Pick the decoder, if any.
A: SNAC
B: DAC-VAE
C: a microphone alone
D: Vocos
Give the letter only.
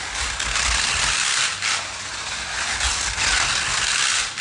C